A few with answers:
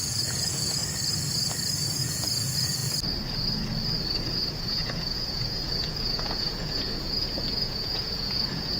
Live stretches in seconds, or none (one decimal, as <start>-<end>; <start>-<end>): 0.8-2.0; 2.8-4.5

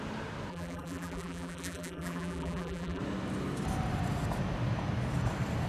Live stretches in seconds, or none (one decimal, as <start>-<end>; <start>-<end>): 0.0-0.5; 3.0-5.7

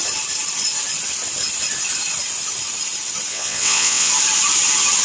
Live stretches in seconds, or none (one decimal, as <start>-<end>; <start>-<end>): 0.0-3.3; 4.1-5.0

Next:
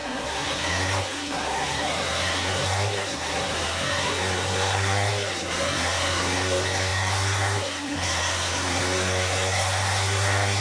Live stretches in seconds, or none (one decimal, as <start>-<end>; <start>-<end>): none

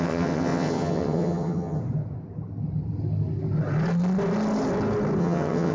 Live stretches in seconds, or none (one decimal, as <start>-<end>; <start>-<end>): 1.8-5.2

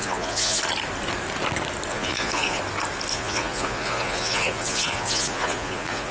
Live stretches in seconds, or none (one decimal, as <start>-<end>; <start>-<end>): 0.6-1.9; 2.6-3.1

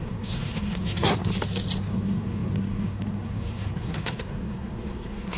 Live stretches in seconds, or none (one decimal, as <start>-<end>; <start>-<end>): 1.3-1.8